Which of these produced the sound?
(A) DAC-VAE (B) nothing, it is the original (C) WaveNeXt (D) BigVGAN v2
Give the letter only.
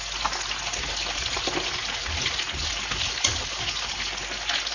B